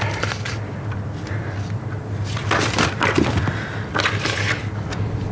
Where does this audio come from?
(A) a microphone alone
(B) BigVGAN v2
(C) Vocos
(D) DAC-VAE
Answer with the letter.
A